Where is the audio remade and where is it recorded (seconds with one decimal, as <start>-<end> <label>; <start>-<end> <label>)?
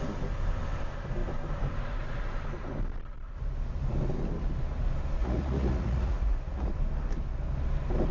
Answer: 0.0-5.2 recorded; 5.2-6.7 remade; 6.7-8.1 recorded